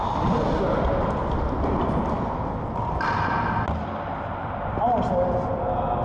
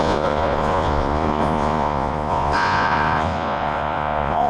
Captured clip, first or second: first